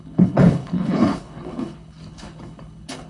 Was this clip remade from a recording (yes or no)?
yes